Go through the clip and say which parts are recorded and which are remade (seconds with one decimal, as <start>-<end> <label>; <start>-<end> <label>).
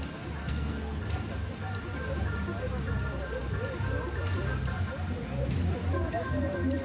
0.0-0.4 recorded; 0.4-1.0 remade; 1.0-6.8 recorded